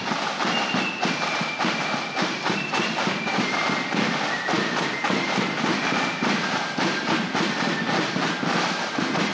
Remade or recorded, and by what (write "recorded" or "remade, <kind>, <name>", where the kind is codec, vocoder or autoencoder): recorded